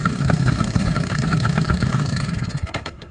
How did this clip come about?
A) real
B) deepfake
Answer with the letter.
B